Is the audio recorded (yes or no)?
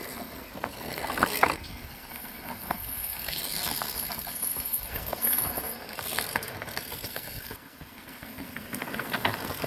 no